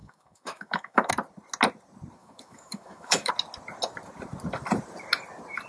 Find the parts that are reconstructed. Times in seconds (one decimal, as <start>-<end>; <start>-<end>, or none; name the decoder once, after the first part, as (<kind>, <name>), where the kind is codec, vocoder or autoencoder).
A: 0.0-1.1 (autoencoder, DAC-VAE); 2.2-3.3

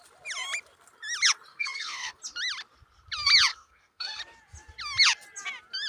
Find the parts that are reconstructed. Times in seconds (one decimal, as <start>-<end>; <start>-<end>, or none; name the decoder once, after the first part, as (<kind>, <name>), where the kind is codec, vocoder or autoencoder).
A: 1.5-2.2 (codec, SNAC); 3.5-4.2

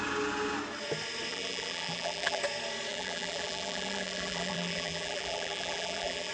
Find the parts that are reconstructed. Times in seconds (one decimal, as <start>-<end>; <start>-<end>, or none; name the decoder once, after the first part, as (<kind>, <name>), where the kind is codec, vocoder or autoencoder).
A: 1.3-2.4 (vocoder, BigVGAN v2); 2.9-6.3

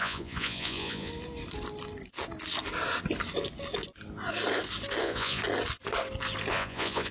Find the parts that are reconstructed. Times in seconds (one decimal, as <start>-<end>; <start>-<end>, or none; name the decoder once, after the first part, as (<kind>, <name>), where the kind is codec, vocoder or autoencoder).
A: 0.0-1.1 (vocoder, Vocos); 5.0-5.4; 6.5-7.1

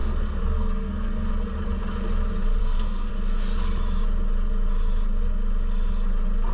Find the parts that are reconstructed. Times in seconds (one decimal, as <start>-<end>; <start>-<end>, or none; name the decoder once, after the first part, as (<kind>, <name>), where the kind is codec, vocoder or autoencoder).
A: 0.0-1.3 (codec, SNAC); 2.6-3.1

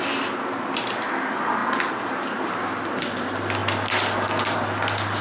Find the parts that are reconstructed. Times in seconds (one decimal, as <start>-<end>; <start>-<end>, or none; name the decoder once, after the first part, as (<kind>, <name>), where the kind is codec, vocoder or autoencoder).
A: none

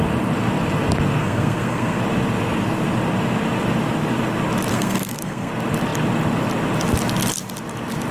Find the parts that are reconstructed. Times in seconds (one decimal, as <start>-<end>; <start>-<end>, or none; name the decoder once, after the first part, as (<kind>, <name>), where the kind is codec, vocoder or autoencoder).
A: 1.2-2.0 (codec, SNAC); 4.7-5.5